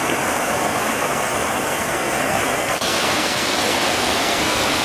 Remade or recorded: remade